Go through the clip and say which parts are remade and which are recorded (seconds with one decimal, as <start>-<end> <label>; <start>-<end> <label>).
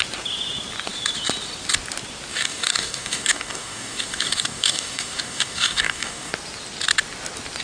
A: 0.0-2.3 recorded; 2.3-6.3 remade; 6.3-7.6 recorded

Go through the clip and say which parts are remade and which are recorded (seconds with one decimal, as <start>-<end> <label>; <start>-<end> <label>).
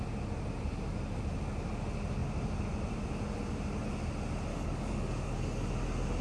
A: 0.0-4.5 recorded; 4.5-5.7 remade; 5.7-6.2 recorded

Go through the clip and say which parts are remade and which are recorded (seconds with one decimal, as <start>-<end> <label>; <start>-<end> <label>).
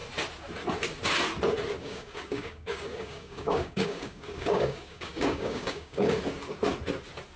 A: 0.0-1.8 recorded; 1.8-6.2 remade; 6.2-7.4 recorded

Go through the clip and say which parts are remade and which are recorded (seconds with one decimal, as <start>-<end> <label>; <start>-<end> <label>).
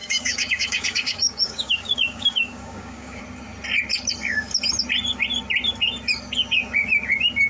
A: 0.0-3.2 remade; 3.2-7.5 recorded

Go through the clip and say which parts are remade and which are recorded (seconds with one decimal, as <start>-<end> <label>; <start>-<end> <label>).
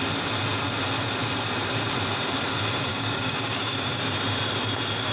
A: 0.0-2.9 recorded; 2.9-4.0 remade; 4.0-5.1 recorded